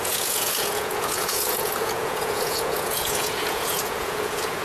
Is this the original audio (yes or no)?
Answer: no